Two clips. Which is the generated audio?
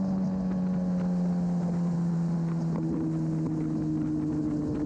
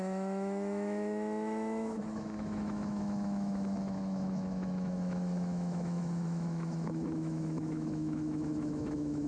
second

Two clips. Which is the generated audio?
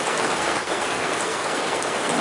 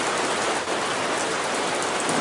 first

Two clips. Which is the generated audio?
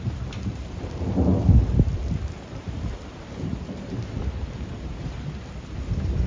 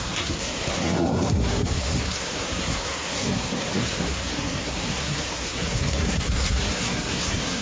second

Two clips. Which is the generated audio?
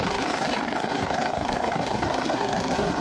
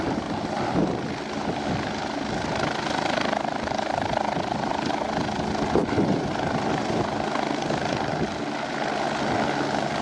first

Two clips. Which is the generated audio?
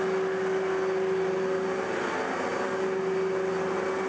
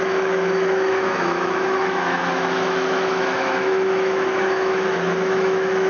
second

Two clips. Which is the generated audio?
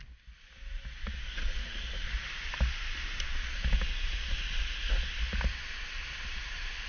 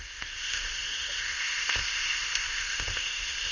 second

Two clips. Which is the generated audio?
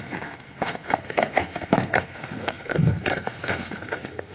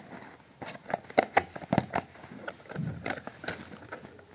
first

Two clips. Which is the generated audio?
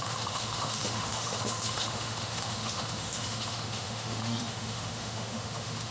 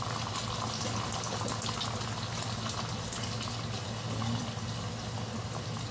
first